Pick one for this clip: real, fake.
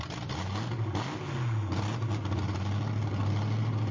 real